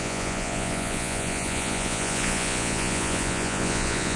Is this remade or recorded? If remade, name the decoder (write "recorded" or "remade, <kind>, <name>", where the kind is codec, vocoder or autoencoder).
remade, vocoder, Vocos